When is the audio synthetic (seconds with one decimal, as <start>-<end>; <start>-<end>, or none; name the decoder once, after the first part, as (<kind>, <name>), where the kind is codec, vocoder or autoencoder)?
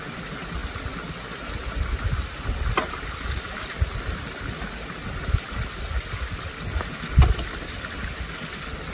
none